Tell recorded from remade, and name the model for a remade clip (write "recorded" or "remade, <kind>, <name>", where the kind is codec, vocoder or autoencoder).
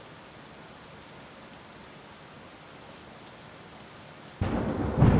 recorded